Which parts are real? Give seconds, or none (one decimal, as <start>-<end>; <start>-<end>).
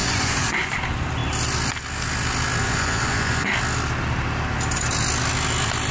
0.7-2.6; 3.5-5.9